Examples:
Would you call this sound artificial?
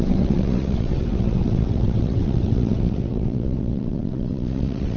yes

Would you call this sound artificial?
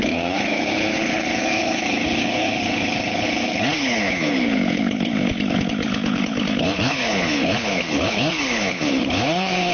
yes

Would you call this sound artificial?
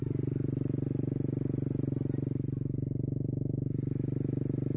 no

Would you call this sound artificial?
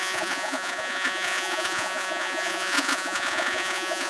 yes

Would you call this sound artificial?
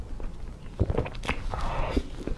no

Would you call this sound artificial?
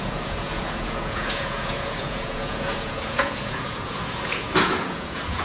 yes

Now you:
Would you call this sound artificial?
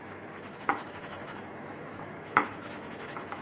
yes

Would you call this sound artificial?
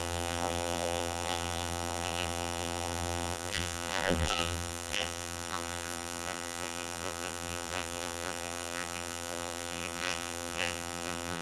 yes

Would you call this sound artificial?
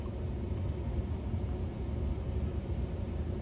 yes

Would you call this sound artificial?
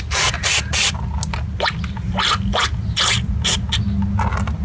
no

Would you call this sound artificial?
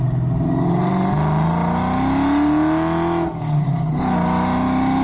no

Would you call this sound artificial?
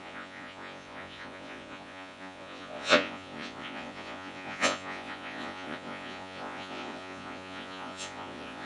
yes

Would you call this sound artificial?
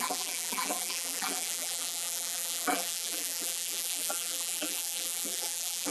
yes